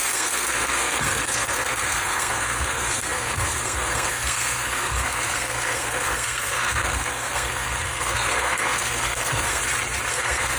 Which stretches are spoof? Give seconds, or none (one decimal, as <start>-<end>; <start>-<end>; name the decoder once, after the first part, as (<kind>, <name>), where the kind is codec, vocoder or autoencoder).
0.0-9.6 (codec, SNAC); 10.1-10.6